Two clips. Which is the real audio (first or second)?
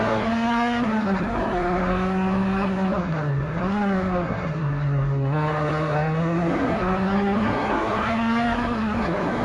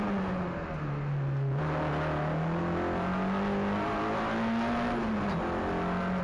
second